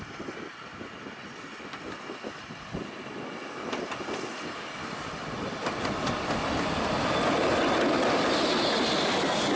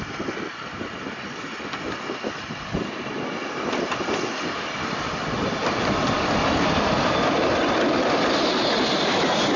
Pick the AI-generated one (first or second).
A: second